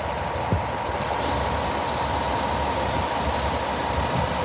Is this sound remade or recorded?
recorded